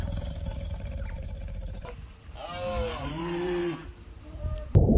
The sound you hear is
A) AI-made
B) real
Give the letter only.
A